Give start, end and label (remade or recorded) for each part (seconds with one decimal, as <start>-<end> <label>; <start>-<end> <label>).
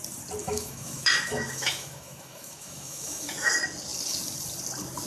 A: 0.0-0.4 recorded; 0.4-3.5 remade; 3.5-5.1 recorded